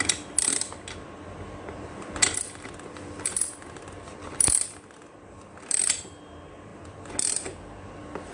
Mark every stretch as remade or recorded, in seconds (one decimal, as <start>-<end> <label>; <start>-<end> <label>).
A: 0.0-8.3 recorded